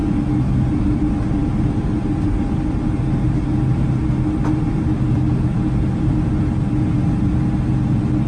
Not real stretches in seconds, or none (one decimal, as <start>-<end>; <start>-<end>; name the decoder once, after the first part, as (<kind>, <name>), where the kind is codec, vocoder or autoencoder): none